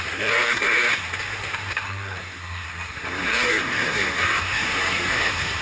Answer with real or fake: fake